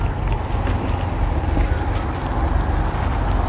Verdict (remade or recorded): recorded